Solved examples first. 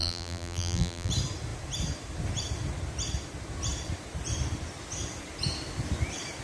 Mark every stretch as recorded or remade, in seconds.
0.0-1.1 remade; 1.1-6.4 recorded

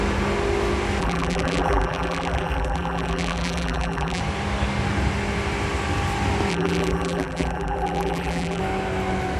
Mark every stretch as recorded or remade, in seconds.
0.0-1.0 recorded; 1.0-4.2 remade; 4.2-6.5 recorded; 6.5-8.6 remade; 8.6-9.4 recorded

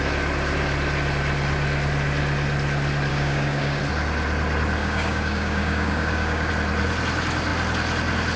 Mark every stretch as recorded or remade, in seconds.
0.0-3.1 recorded; 3.1-3.8 remade; 3.8-4.8 recorded; 4.8-6.5 remade; 6.5-8.4 recorded

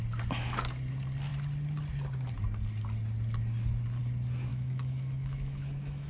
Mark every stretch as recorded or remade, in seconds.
0.0-4.5 recorded; 4.5-6.1 remade

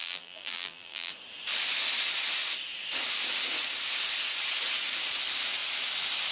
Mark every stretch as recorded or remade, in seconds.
0.0-1.1 remade; 1.1-6.3 recorded

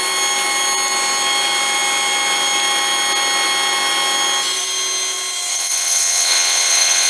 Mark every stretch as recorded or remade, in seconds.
0.0-5.5 recorded; 5.5-7.1 remade

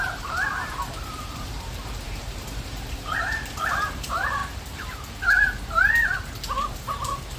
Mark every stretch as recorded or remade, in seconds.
0.0-4.4 remade; 4.4-6.7 recorded; 6.7-7.4 remade

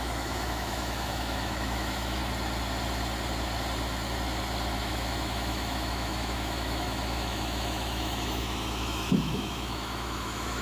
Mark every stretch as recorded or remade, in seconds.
0.0-2.2 remade; 2.2-4.8 recorded; 4.8-10.6 remade